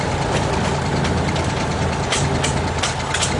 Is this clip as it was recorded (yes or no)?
yes